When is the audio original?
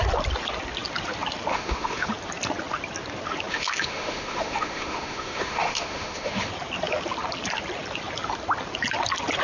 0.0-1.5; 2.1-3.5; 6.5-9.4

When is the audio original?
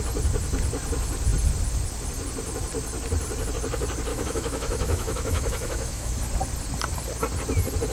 0.0-4.1; 6.2-7.9